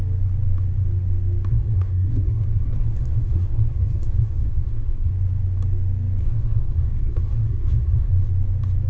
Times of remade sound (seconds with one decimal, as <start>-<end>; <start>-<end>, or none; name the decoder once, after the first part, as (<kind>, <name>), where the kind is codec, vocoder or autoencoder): 1.5-5.1 (codec, SNAC); 6.2-8.1